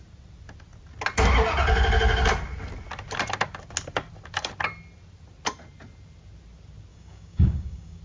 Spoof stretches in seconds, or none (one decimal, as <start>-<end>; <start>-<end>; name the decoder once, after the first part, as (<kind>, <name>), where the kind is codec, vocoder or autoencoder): 6.9-8.0 (codec, DAC)